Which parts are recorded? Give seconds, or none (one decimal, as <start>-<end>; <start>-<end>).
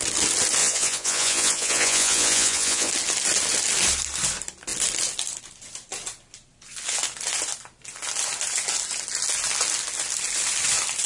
0.0-0.6; 2.9-11.1